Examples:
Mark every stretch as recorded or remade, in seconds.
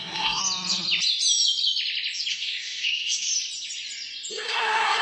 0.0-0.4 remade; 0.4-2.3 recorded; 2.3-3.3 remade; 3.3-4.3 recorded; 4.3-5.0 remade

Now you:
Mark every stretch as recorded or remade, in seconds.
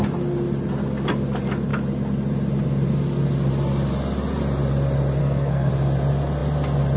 0.0-5.2 recorded; 5.2-5.7 remade; 5.7-7.0 recorded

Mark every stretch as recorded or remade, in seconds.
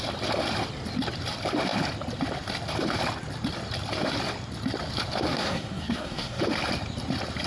0.0-5.3 recorded; 5.3-6.4 remade; 6.4-7.5 recorded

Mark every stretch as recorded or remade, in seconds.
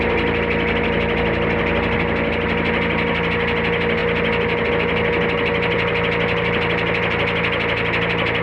0.0-8.4 recorded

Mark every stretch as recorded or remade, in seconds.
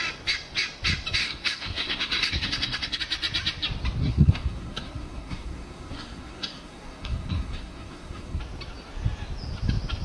0.0-1.2 recorded; 1.2-3.0 remade; 3.0-4.0 recorded; 4.0-8.4 remade; 8.4-10.0 recorded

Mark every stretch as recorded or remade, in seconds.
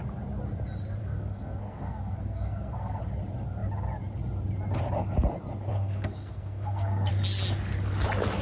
0.0-1.0 recorded; 1.0-3.0 remade; 3.0-5.7 recorded; 5.7-7.1 remade; 7.1-8.4 recorded